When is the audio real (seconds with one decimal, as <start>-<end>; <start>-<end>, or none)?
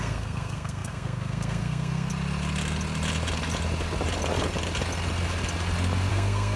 2.1-6.1